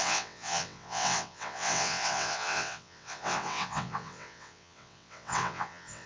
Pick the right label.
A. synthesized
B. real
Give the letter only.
A